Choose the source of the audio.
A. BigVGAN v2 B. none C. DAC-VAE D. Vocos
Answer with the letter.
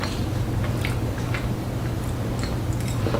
B